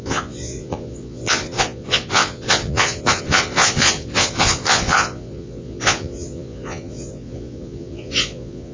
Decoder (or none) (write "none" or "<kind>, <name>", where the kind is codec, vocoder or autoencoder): vocoder, Vocos